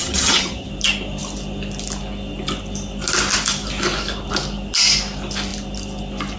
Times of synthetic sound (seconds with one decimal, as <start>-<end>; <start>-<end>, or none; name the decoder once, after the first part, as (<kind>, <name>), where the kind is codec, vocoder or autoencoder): 0.0-0.7 (vocoder, HiFi-GAN)